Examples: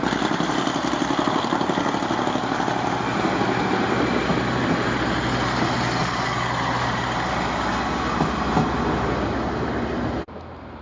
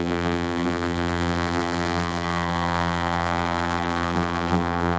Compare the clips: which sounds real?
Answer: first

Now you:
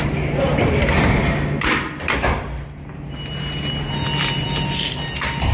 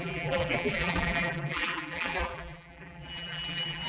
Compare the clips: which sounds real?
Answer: first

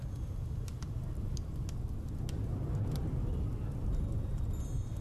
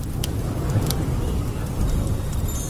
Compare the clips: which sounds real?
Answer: first